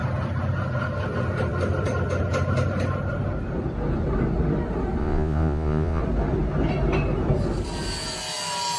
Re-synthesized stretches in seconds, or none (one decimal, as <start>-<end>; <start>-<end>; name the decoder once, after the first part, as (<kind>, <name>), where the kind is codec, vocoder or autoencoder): 5.0-6.0 (vocoder, Vocos)